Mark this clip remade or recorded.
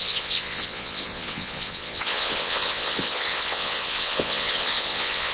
remade